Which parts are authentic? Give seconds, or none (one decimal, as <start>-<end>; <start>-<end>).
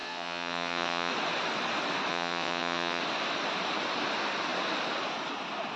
1.1-2.1; 3.0-5.8